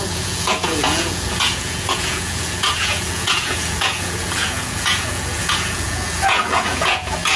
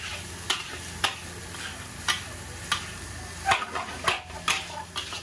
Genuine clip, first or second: second